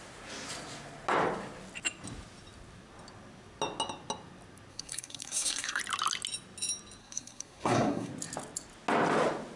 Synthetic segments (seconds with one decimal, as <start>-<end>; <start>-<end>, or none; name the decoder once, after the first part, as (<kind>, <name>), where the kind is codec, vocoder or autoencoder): 4.7-5.8 (codec, SNAC); 7.0-8.1